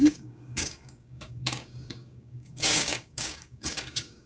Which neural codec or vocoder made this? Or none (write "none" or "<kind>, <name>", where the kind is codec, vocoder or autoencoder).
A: codec, DAC